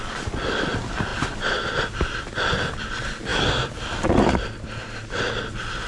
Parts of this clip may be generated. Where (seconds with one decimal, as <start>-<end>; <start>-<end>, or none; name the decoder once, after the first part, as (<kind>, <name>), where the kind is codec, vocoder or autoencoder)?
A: none